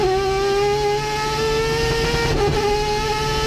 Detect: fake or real real